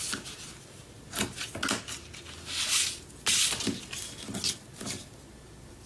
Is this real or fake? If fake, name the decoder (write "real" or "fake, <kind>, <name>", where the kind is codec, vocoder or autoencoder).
real